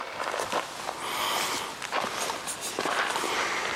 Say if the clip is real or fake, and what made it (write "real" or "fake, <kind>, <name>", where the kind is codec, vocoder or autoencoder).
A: real